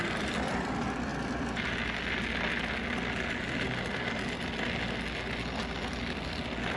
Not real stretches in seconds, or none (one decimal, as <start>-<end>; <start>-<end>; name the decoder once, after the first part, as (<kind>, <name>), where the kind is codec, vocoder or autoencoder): none